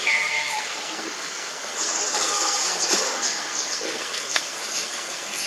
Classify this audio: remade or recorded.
remade